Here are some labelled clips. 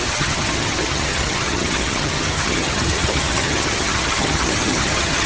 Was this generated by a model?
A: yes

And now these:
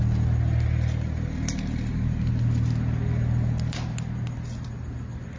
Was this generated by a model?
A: no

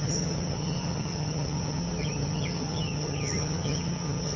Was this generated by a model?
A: yes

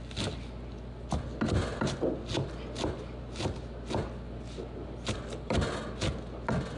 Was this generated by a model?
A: no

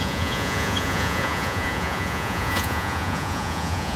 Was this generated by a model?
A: yes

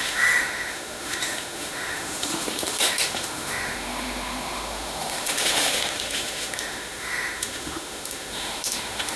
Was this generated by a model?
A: yes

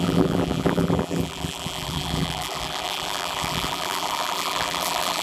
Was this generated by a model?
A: yes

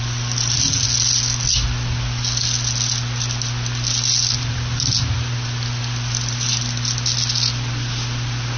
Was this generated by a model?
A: no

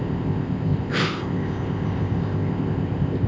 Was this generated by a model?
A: yes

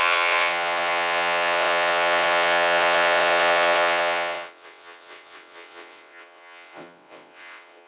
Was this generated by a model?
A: yes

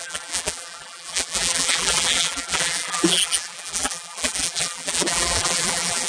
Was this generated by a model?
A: yes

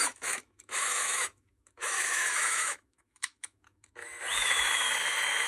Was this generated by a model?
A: yes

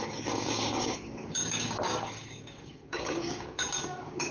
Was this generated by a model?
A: yes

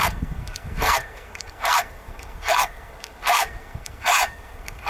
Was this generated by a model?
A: yes